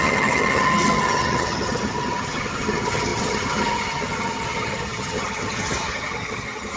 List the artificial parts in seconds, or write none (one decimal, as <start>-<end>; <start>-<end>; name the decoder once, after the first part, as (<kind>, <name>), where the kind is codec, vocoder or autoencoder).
0.0-6.8 (vocoder, HiFi-GAN)